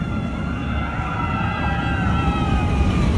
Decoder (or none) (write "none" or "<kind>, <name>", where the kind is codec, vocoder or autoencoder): none